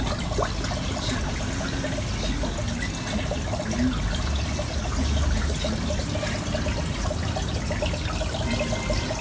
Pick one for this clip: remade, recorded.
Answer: recorded